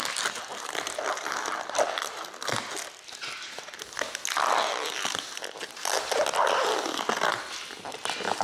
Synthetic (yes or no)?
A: no